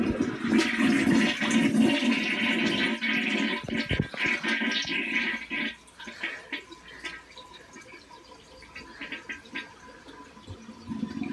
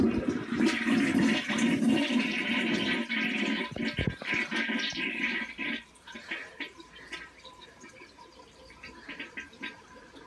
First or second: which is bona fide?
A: first